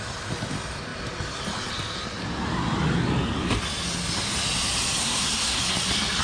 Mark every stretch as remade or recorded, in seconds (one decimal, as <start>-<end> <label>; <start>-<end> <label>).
0.0-5.0 recorded; 5.0-5.6 remade; 5.6-6.2 recorded